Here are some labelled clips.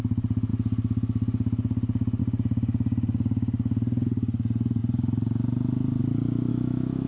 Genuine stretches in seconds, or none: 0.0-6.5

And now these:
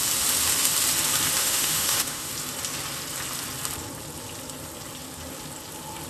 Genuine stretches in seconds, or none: 0.0-1.4; 2.3-6.1

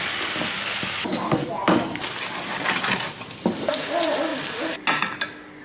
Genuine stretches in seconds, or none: 0.0-5.6